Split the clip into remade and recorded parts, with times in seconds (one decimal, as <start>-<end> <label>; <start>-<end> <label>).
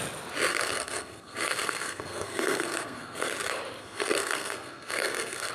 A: 0.0-0.5 recorded; 0.5-3.3 remade; 3.3-3.8 recorded; 3.8-5.5 remade